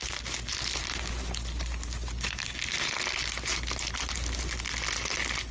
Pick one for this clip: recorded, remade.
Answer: recorded